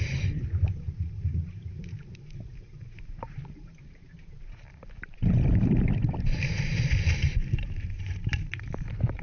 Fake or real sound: fake